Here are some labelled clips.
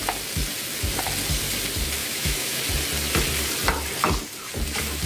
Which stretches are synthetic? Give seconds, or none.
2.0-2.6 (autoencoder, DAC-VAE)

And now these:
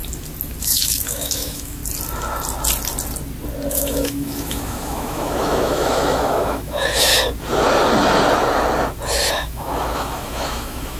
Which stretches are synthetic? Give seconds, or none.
0.6-1.8 (autoencoder, DAC-VAE); 3.7-7.1; 9.3-11.0

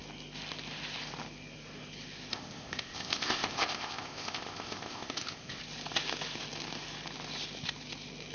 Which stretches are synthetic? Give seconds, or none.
2.3-5.6 (codec, ZipCodec)

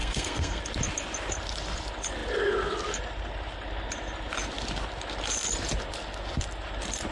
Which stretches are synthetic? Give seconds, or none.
0.0-0.6 (codec, SNAC)

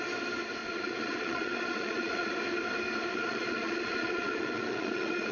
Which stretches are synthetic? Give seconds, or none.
0.6-2.3 (vocoder, Vocos); 3.1-5.3